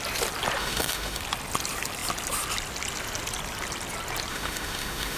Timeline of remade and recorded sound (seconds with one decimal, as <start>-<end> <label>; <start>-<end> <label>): 0.0-0.6 recorded; 0.6-1.2 remade; 1.2-4.3 recorded; 4.3-5.2 remade